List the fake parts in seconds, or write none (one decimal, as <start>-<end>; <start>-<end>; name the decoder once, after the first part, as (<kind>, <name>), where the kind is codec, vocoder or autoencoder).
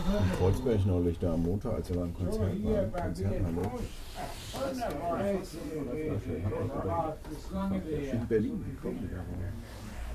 3.6-8.4 (vocoder, BigVGAN v2)